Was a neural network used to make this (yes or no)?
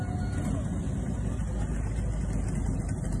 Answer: no